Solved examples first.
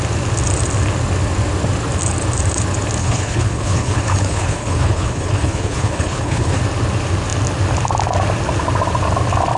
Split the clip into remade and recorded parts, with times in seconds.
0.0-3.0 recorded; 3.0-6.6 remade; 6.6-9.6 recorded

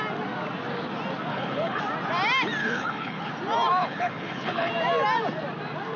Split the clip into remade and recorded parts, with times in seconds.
0.0-1.3 recorded; 1.3-1.8 remade; 1.8-2.6 recorded; 2.6-3.3 remade; 3.3-3.8 recorded; 3.8-4.7 remade; 4.7-6.0 recorded

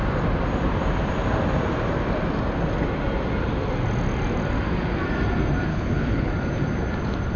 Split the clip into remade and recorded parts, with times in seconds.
0.0-5.7 recorded; 5.7-6.3 remade; 6.3-7.4 recorded